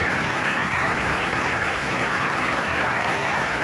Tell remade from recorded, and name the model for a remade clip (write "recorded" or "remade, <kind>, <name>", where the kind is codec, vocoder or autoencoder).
remade, codec, SNAC